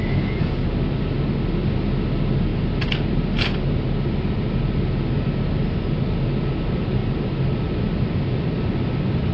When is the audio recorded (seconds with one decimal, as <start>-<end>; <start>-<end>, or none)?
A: 0.0-9.3